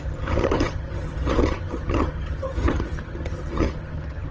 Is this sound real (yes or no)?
no